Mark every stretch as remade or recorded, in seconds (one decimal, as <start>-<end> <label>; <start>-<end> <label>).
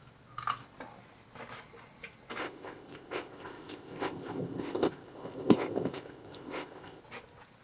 0.0-2.4 recorded; 2.4-7.0 remade; 7.0-7.6 recorded